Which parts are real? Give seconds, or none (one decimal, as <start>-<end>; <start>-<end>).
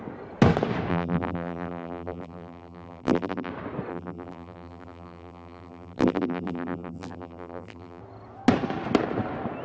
0.0-0.9; 3.5-3.9; 8.0-9.6